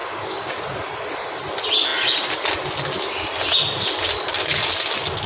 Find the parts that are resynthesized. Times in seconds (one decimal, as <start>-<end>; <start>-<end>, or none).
0.0-0.5